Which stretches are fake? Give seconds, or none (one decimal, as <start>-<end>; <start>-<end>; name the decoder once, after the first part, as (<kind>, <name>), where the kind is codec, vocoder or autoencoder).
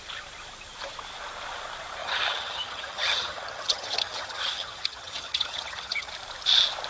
2.0-6.1 (vocoder, HiFi-GAN)